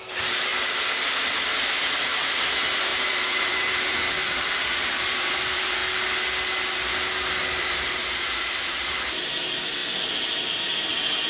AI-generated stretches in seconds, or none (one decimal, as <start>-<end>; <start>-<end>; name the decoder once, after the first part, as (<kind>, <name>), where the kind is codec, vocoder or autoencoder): 0.0-0.5 (vocoder, BigVGAN v2); 1.7-5.8; 7.6-9.8; 10.4-11.3